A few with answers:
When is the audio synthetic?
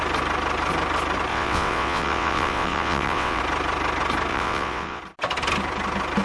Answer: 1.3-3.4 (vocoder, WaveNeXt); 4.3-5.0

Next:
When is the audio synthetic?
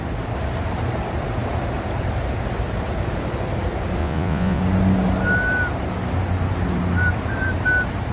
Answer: 4.0-4.6 (vocoder, Vocos)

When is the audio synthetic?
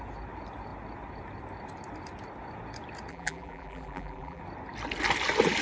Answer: 3.1-4.4 (vocoder, BigVGAN v2)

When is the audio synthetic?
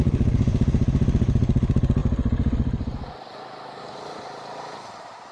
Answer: none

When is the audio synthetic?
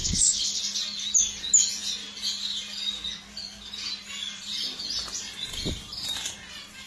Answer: 0.0-0.6 (codec, HILCodec)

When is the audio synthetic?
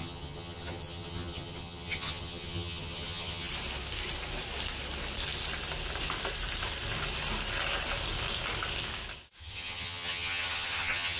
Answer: 0.0-3.5 (vocoder, HiFi-GAN); 9.4-11.2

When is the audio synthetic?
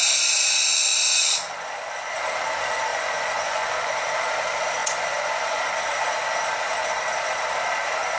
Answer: 2.9-3.9 (vocoder, Vocos); 4.8-5.6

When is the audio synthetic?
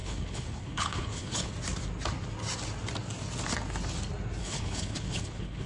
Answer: 0.0-1.5 (codec, HILCodec); 4.4-5.7